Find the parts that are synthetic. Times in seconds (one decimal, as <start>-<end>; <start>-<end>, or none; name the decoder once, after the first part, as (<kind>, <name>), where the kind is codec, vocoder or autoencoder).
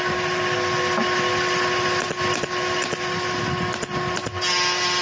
none